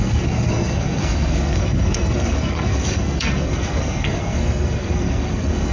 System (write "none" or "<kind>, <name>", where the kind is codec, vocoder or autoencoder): codec, SNAC